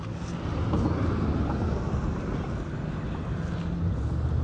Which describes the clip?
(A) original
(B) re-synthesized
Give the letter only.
A